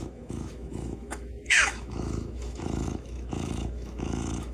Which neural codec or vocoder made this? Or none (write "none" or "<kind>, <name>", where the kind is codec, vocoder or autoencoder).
autoencoder, DAC-VAE